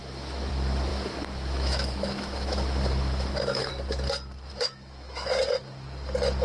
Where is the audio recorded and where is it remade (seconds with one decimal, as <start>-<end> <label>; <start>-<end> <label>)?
0.0-0.5 remade; 0.5-0.9 recorded; 0.9-3.7 remade; 3.7-4.5 recorded; 4.5-5.4 remade; 5.4-6.4 recorded